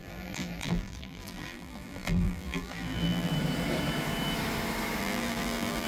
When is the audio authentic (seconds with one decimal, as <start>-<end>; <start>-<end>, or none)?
3.3-5.0